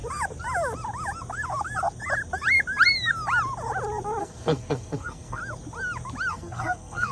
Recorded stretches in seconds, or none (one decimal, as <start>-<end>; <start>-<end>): 0.0-4.2; 5.4-6.3